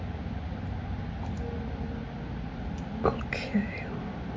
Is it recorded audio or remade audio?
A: recorded